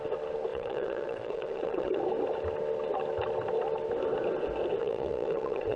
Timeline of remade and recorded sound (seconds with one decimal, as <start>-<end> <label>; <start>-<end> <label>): 0.0-0.5 recorded; 0.5-2.0 remade; 2.0-4.8 recorded; 4.8-5.8 remade